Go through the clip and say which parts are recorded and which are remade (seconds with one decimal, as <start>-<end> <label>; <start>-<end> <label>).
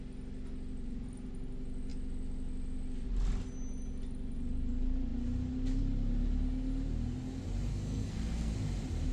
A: 0.0-7.7 recorded; 7.7-8.5 remade; 8.5-9.1 recorded